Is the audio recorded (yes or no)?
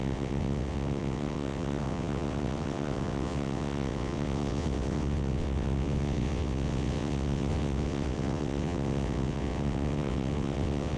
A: no